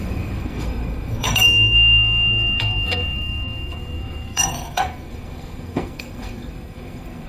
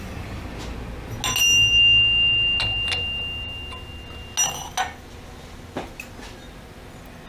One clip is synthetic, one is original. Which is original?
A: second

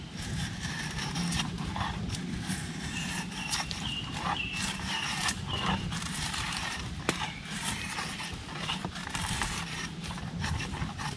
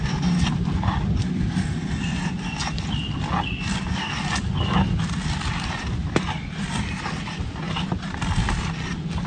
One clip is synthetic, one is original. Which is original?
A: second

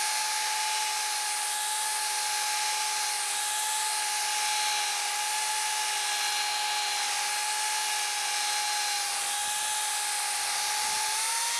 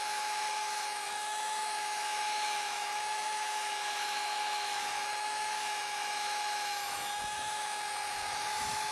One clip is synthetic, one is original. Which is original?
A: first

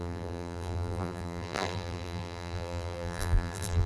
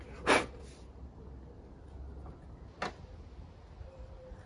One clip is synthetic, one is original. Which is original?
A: second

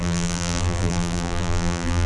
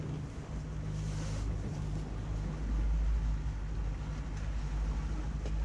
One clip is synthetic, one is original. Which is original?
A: second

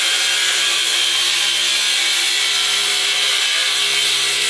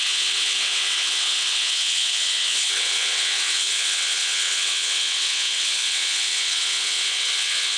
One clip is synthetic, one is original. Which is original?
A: first